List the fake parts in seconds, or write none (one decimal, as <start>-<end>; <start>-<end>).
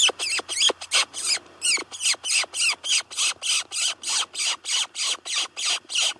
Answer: none